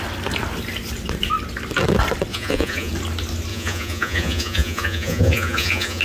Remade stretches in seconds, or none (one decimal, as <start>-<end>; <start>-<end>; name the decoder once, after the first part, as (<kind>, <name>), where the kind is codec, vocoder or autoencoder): 2.3-2.9 (vocoder, Vocos); 3.5-6.0